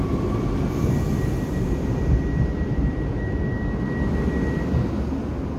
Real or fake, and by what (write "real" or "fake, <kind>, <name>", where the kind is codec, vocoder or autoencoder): real